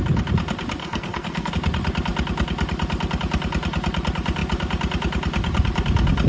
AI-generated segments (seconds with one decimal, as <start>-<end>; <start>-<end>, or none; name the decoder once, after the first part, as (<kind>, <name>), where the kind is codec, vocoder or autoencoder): 0.8-1.5 (codec, SNAC)